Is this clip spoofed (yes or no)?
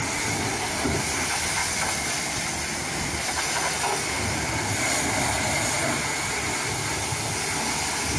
no